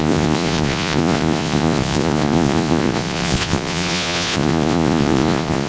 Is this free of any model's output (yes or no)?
no